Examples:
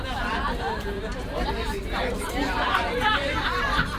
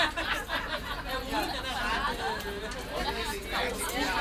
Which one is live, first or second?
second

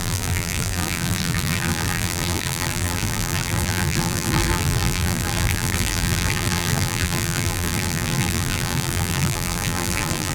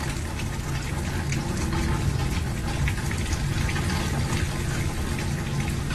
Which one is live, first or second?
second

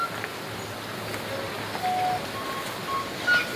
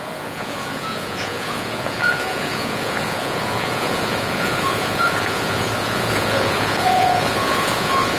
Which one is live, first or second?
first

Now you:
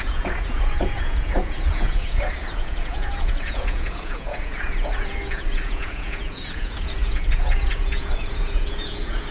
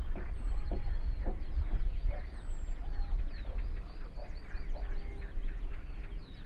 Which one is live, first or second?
second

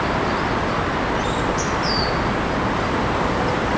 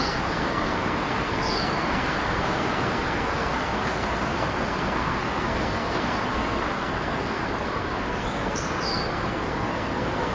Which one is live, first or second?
first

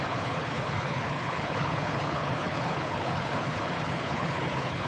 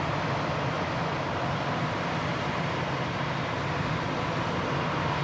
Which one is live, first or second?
second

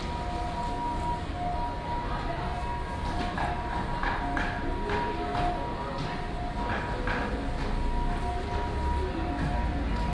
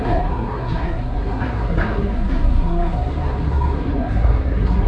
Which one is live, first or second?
first